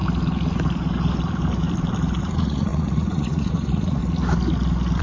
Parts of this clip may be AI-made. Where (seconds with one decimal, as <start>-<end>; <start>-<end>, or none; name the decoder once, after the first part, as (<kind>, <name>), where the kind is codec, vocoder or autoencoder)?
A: 2.2-4.0 (vocoder, Vocos)